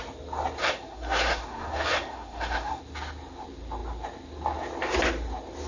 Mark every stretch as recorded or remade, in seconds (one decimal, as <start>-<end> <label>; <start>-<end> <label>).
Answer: 0.0-0.6 recorded; 0.6-2.8 remade; 2.8-5.7 recorded

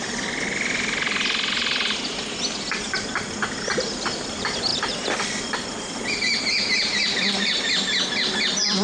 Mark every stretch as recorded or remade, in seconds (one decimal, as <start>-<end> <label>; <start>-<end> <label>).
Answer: 0.0-8.8 recorded

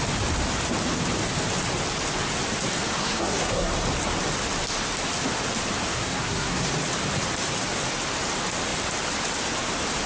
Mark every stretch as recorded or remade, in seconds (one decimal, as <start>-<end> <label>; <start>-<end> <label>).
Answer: 0.0-3.0 recorded; 3.0-3.7 remade; 3.7-5.9 recorded; 5.9-6.7 remade; 6.7-10.1 recorded

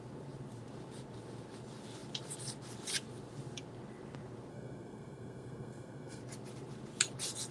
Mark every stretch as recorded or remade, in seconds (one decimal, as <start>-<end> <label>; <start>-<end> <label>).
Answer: 0.0-4.5 recorded; 4.5-6.2 remade; 6.2-7.5 recorded

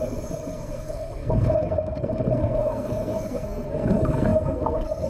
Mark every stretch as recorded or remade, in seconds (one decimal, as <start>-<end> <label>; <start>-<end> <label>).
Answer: 0.0-5.1 remade

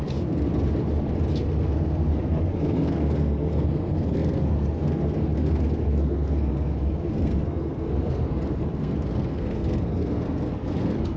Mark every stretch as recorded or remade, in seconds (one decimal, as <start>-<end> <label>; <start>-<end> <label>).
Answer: 0.0-0.5 remade; 0.5-1.3 recorded; 1.3-11.2 remade